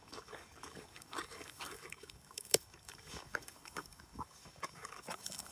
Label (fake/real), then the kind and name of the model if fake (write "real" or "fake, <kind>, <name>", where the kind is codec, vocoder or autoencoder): fake, codec, DAC